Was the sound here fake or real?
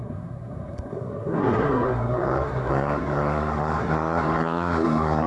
fake